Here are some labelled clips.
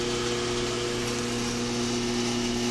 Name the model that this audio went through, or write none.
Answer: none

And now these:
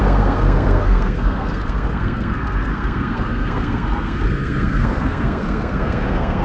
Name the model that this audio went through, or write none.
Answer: codec, SNAC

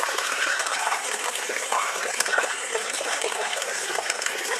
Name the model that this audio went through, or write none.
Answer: codec, SNAC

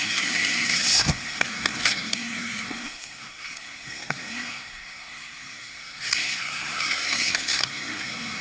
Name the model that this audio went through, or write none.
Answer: codec, SNAC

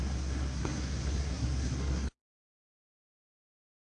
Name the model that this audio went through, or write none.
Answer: codec, SNAC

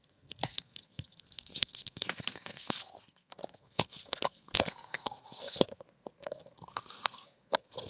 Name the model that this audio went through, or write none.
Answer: codec, SNAC